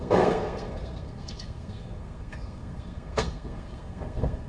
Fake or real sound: fake